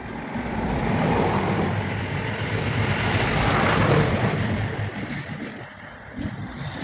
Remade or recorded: remade